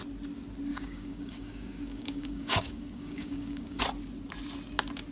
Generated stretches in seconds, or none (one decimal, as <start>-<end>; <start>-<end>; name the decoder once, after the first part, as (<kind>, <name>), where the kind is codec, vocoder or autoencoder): 0.7-3.8 (codec, DAC)